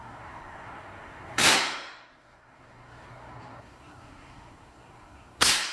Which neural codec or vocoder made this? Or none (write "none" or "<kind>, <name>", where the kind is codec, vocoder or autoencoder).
codec, SNAC